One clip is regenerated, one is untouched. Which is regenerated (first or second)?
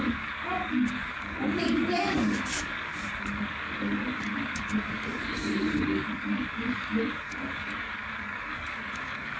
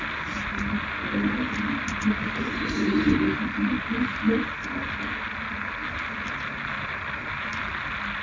first